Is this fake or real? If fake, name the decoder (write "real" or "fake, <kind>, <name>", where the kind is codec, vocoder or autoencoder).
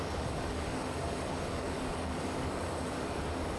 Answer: fake, codec, DAC